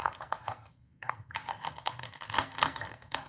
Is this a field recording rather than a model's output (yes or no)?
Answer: no